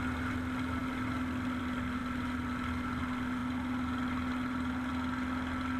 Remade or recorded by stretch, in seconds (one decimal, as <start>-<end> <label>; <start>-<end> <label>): 0.0-5.8 recorded